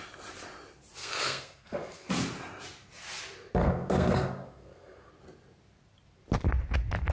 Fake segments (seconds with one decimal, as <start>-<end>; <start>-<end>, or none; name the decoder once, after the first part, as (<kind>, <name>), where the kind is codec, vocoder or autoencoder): 1.0-2.1 (codec, SNAC); 3.6-5.1